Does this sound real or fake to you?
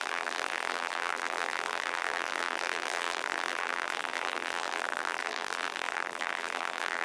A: fake